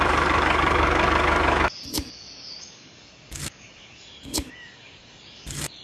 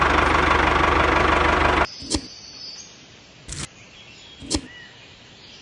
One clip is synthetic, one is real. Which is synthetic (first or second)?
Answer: first